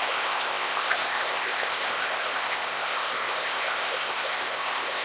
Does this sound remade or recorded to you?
remade